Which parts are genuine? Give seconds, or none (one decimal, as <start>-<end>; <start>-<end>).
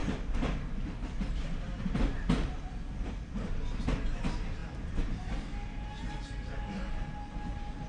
3.1-4.6; 5.2-7.9